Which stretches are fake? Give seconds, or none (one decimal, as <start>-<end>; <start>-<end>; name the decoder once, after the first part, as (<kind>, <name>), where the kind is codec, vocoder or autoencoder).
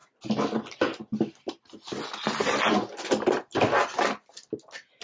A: 0.0-3.0 (vocoder, BigVGAN v2)